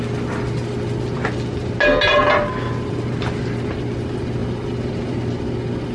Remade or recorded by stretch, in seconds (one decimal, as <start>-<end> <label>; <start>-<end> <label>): 0.0-5.9 recorded